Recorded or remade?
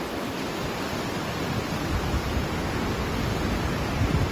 recorded